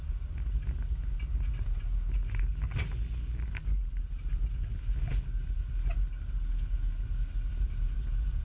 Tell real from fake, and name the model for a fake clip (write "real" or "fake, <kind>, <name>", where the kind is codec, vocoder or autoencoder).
real